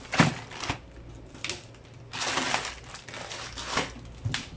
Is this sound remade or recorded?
recorded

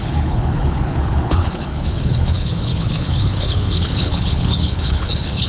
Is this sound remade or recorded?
remade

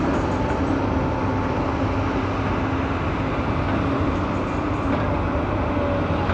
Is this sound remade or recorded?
recorded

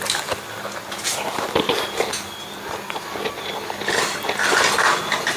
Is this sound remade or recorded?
recorded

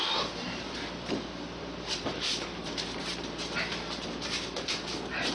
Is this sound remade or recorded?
remade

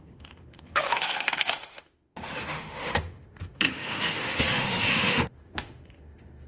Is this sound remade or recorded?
remade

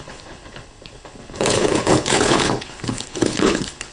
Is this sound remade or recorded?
remade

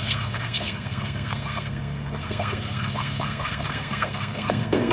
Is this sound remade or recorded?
remade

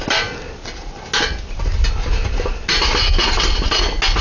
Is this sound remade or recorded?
recorded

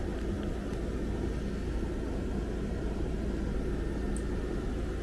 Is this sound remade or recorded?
recorded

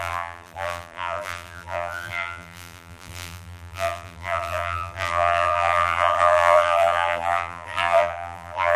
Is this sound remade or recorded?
remade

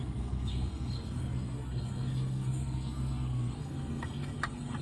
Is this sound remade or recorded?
remade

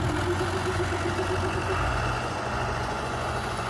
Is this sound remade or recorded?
remade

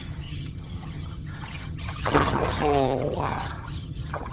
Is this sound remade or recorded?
remade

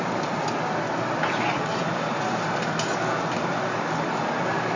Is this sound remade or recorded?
recorded